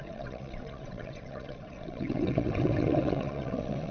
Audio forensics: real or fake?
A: fake